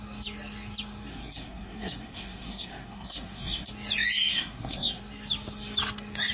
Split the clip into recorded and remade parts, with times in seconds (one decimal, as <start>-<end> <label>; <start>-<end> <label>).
0.0-1.1 recorded; 1.1-3.7 remade; 3.7-4.3 recorded; 4.3-5.0 remade; 5.0-6.3 recorded